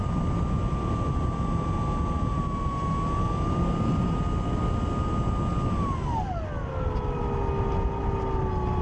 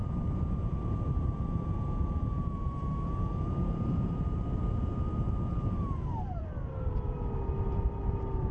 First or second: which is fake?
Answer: second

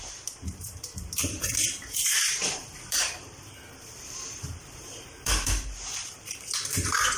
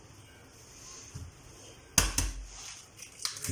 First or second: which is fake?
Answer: first